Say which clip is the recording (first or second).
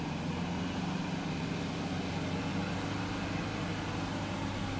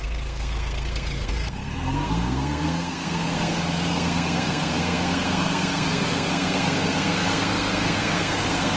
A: first